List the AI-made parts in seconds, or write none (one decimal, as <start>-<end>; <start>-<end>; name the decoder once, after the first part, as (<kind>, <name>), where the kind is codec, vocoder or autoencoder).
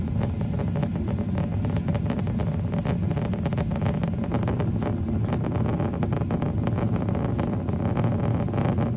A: none